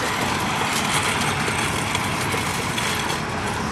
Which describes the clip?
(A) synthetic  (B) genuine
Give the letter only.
B